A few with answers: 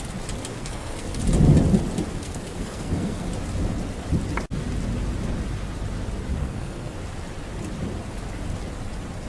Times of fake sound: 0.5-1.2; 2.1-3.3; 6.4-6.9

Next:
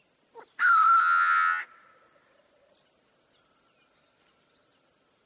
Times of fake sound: 1.0-1.6

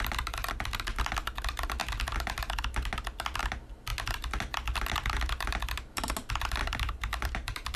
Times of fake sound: 6.6-7.8

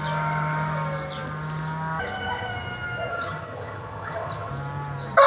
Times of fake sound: 3.1-4.5

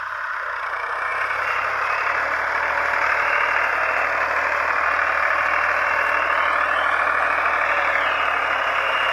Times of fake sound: none